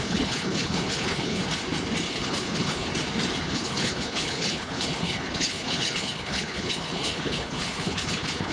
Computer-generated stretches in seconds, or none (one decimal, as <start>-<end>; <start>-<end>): 0.0-1.4; 2.1-2.9; 3.4-8.5